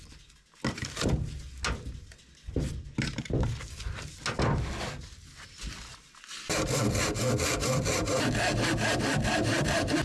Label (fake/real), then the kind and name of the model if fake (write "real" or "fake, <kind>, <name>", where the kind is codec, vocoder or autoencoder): real